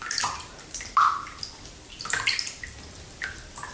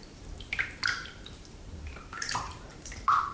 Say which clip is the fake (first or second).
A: second